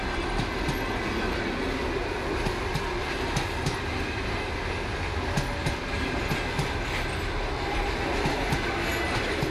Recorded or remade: recorded